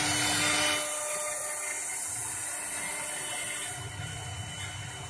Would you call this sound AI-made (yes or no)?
no